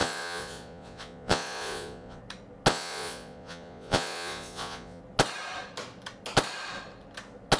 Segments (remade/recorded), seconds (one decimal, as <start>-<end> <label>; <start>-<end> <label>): 0.0-2.2 remade; 2.2-2.7 recorded; 2.7-5.0 remade; 5.0-7.6 recorded